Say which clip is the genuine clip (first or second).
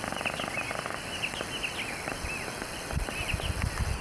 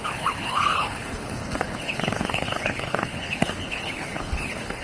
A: first